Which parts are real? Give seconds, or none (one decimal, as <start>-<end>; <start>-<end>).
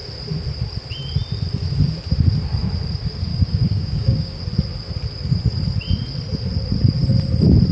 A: 0.0-3.3; 4.4-7.7